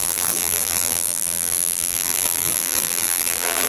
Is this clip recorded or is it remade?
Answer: remade